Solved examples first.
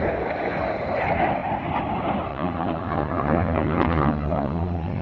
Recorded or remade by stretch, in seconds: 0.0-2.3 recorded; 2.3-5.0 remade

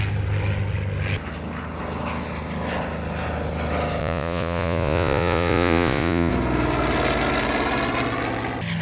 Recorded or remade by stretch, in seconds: 0.0-4.0 recorded; 4.0-6.3 remade; 6.3-8.8 recorded

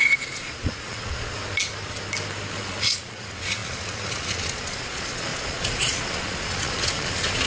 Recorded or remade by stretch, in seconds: 0.0-1.4 remade; 1.4-2.5 recorded; 2.5-7.5 remade

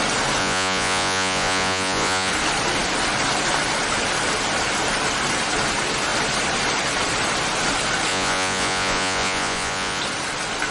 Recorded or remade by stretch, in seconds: 0.0-0.4 recorded; 0.4-2.3 remade; 2.3-8.1 recorded; 8.1-10.0 remade; 10.0-10.7 recorded

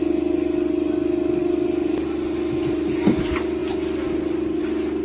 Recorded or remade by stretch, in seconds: 0.0-5.0 recorded